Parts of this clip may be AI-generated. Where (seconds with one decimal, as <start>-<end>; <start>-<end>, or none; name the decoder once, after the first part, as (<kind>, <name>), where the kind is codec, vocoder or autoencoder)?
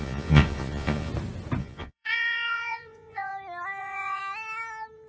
0.0-1.1 (vocoder, Vocos); 1.6-3.3; 3.8-4.2